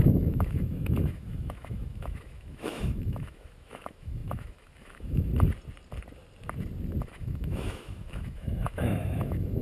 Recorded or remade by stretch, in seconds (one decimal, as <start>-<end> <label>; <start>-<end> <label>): 0.0-5.3 remade; 5.3-7.1 recorded; 7.1-9.6 remade